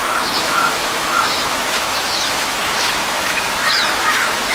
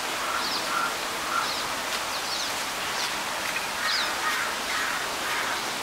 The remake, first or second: first